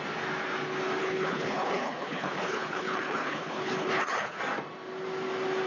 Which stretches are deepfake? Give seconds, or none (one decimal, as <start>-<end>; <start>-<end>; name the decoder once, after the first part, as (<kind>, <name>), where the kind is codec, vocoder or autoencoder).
1.0-4.4 (codec, HILCodec)